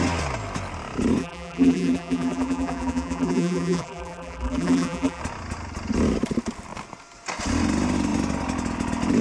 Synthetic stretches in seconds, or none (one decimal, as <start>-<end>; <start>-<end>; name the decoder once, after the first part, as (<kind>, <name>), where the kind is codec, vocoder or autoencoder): 1.2-5.2 (vocoder, BigVGAN v2)

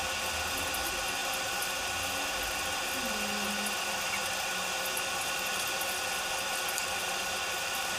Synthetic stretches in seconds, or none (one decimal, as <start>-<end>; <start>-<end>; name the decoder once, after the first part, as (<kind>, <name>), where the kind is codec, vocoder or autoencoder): 1.2-1.8 (vocoder, BigVGAN v2); 6.8-8.0

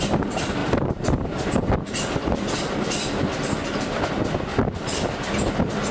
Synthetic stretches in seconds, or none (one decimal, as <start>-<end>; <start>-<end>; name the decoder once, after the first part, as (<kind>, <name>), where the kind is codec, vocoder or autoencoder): 0.6-4.1 (vocoder, BigVGAN v2); 4.5-5.5

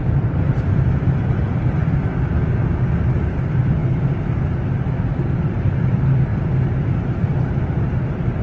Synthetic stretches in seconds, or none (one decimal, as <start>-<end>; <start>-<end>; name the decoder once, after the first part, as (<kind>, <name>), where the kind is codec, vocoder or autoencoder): 0.0-2.1 (vocoder, BigVGAN v2); 3.0-3.8; 5.6-6.3; 7.5-8.4